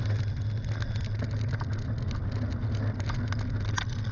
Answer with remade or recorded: recorded